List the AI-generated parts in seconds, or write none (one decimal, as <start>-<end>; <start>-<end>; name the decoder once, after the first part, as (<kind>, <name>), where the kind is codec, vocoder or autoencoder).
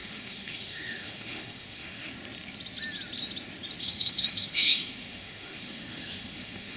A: 0.0-2.1 (autoencoder, DAC-VAE); 3.8-6.8